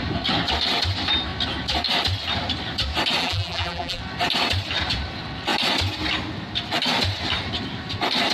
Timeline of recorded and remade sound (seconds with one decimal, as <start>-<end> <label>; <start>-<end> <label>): 0.0-3.2 recorded; 3.2-4.0 remade; 4.0-8.3 recorded